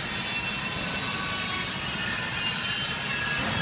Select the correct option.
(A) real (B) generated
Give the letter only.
A